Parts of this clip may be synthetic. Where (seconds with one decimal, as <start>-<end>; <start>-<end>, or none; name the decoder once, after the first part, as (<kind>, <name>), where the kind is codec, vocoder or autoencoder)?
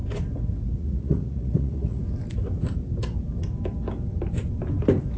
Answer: 0.8-2.0 (vocoder, Vocos)